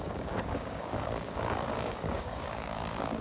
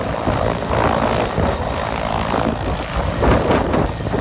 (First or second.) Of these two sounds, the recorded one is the second